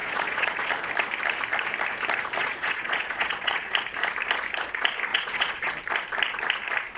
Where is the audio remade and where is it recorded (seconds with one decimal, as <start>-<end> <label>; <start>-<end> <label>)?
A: 0.0-0.7 remade; 0.7-2.4 recorded; 2.4-3.7 remade; 3.7-5.1 recorded; 5.1-5.7 remade; 5.7-7.0 recorded